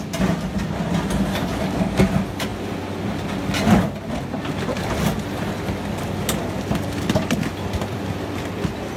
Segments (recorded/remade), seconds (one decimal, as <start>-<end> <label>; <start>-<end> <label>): 0.0-1.5 recorded; 1.5-2.0 remade; 2.0-9.0 recorded